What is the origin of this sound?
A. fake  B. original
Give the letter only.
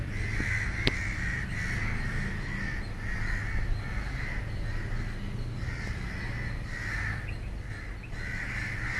B